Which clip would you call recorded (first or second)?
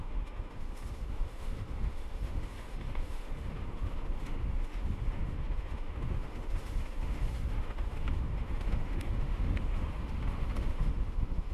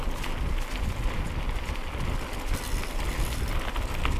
second